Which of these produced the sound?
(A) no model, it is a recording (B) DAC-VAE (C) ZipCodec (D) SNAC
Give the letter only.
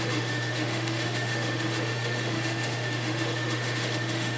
B